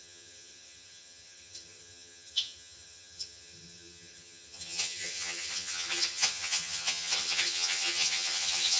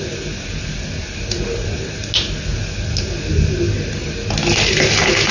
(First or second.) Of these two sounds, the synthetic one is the first